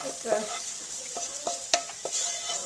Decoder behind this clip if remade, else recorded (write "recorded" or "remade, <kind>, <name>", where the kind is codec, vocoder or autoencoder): recorded